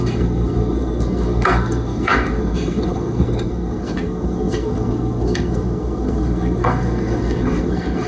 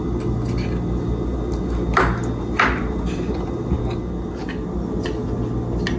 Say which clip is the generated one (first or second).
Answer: first